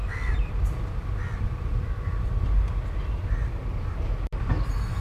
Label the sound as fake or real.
real